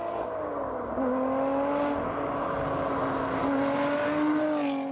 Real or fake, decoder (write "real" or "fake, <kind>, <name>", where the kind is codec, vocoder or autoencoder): real